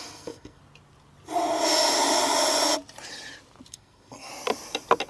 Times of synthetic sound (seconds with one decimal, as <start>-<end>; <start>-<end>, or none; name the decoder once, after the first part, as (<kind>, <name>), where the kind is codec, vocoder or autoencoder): 0.0-0.6 (codec, SNAC); 3.7-4.3